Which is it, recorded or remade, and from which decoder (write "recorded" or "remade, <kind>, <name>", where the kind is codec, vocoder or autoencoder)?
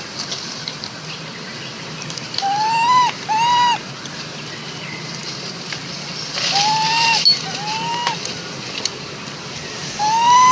recorded